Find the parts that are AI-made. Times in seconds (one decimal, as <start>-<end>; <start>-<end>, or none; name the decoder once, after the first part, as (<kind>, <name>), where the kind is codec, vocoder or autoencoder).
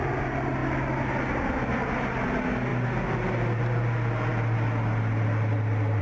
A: 2.7-3.6 (vocoder, BigVGAN v2)